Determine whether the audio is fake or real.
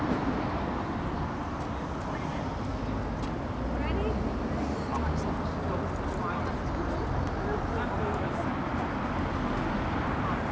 real